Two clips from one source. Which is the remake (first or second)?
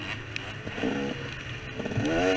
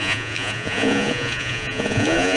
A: second